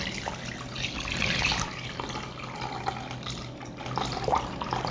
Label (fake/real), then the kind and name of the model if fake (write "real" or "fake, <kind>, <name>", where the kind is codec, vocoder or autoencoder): real